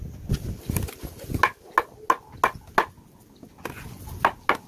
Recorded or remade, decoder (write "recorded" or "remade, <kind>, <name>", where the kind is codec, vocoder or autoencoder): recorded